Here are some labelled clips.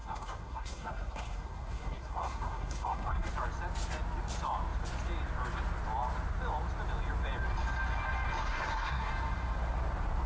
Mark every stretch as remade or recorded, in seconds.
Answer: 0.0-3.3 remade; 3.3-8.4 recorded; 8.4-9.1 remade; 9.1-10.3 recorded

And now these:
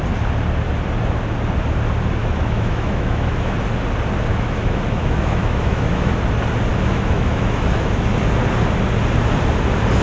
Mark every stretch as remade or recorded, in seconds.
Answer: 0.0-2.2 recorded; 2.2-3.5 remade; 3.5-4.3 recorded; 4.3-6.1 remade; 6.1-6.7 recorded; 6.7-8.2 remade; 8.2-10.0 recorded

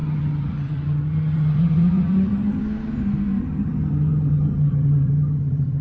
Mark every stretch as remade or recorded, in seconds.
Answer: 0.0-2.6 remade; 2.6-3.4 recorded; 3.4-5.8 remade

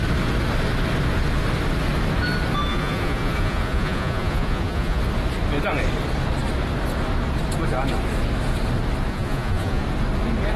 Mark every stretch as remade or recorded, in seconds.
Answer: 0.0-2.7 recorded; 2.7-5.0 remade; 5.0-9.1 recorded; 9.1-9.8 remade; 9.8-10.6 recorded

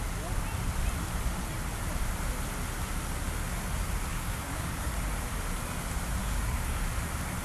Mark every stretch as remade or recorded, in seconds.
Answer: 0.0-4.1 recorded; 4.1-4.9 remade; 4.9-6.2 recorded; 6.2-6.8 remade; 6.8-7.4 recorded

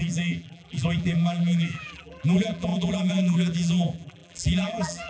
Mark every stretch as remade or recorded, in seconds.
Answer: 0.0-5.1 remade

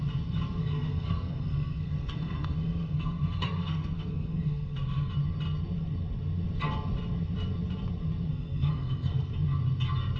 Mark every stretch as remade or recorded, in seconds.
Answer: 0.0-0.6 recorded; 0.6-5.1 remade; 5.1-8.3 recorded; 8.3-9.3 remade; 9.3-10.2 recorded